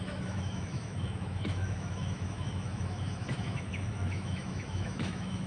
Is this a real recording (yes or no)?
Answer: no